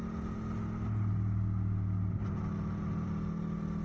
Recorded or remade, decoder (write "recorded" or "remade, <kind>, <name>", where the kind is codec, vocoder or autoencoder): recorded